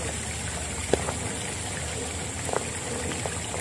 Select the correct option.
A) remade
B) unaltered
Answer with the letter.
B